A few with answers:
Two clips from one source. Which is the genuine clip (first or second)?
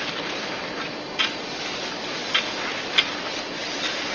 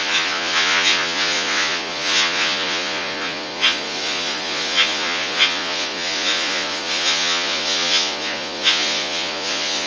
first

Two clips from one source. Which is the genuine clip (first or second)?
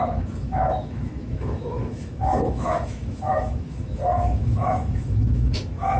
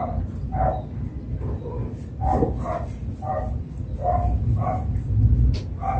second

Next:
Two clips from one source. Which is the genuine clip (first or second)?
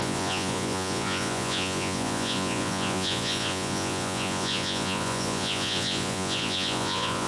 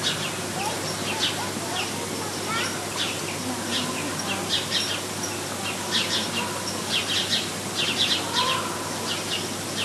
second